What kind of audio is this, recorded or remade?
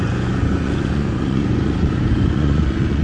remade